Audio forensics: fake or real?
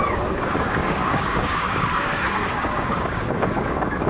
fake